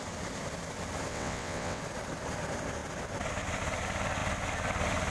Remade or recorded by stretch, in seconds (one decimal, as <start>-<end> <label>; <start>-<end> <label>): 0.0-1.1 recorded; 1.1-1.8 remade; 1.8-5.1 recorded